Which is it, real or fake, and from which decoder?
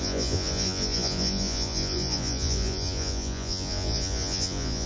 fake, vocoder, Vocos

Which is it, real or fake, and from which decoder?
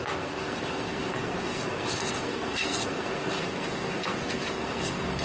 fake, codec, SNAC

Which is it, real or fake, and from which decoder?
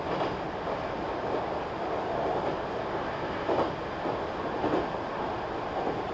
real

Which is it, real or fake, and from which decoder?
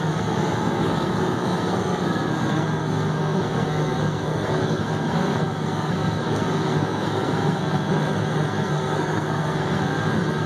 fake, codec, SNAC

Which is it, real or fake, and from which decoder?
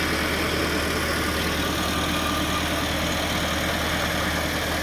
real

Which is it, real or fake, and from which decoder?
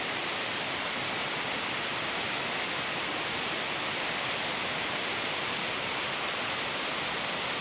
real